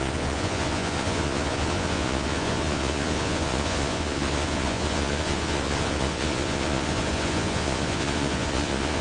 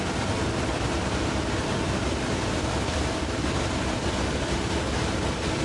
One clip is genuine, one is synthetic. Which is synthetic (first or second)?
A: first